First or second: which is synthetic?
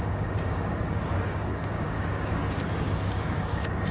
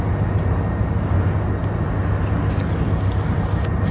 first